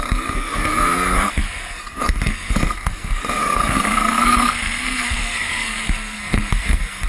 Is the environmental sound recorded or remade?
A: remade